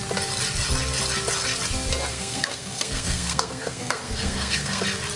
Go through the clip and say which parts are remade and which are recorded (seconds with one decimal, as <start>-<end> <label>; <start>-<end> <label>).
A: 0.0-2.1 recorded; 2.1-4.8 remade; 4.8-5.2 recorded